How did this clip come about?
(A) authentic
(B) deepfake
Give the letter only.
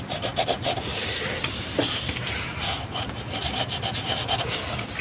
A